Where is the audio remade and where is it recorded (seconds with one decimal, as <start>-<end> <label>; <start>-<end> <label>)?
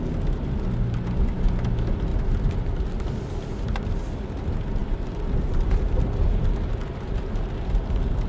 0.0-8.3 recorded